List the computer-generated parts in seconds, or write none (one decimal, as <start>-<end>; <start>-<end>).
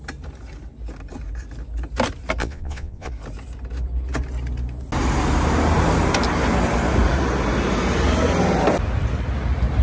2.4-3.1